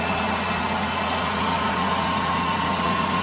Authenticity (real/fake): fake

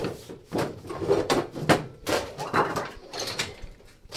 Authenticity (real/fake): fake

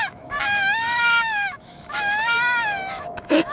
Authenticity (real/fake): fake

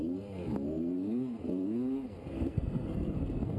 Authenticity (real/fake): fake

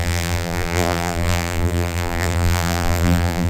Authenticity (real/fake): fake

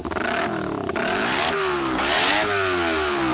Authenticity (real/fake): fake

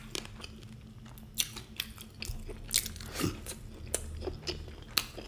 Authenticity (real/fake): real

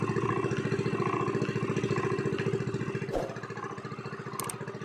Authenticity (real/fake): real